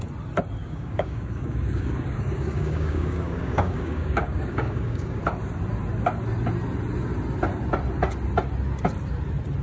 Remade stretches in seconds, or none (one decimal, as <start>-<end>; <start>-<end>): 0.6-5.2

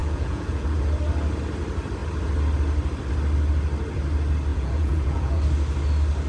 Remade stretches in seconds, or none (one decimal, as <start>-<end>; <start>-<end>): 0.0-0.9; 4.5-5.4

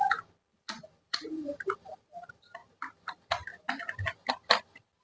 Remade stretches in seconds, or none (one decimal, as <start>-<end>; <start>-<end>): 0.0-2.6; 4.3-5.0

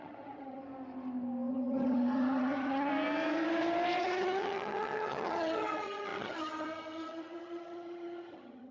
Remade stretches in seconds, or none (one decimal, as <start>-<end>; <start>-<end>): 0.0-0.6; 1.5-2.9; 4.0-8.7